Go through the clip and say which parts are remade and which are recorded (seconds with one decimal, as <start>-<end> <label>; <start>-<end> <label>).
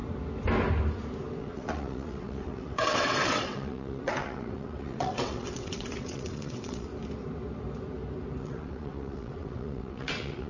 0.0-1.4 recorded; 1.4-6.9 remade; 6.9-8.4 recorded; 8.4-10.5 remade